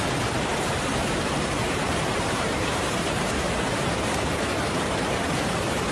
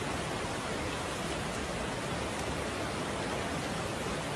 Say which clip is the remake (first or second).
first